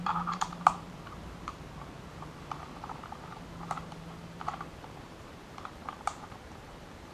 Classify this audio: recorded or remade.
remade